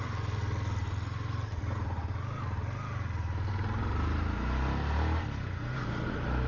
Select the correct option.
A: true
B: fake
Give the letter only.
A